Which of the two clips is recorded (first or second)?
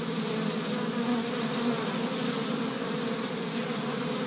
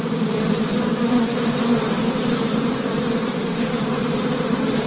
first